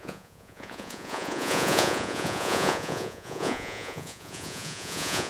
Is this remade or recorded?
remade